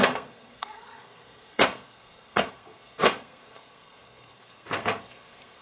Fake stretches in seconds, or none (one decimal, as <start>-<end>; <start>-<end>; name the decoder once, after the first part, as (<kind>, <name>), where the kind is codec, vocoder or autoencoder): 0.0-5.6 (codec, SNAC)

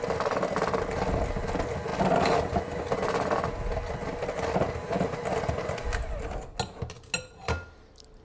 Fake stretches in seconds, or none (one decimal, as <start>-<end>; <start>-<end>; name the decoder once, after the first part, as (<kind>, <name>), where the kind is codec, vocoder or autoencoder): none